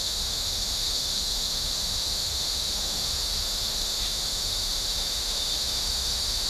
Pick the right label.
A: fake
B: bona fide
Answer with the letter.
A